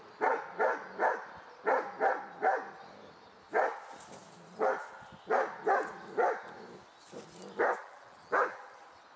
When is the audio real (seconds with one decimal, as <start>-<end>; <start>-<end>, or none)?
0.0-7.8; 8.6-9.2